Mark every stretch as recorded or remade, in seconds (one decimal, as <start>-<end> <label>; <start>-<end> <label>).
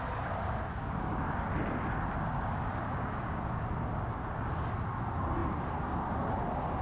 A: 0.0-0.8 recorded; 0.8-1.4 remade; 1.4-2.8 recorded; 2.8-3.4 remade; 3.4-6.8 recorded